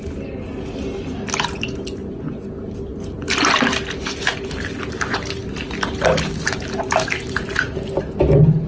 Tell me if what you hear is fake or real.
real